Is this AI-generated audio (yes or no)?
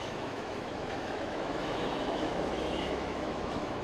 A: yes